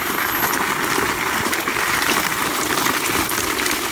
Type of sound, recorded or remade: recorded